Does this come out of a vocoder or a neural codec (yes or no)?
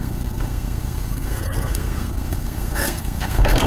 yes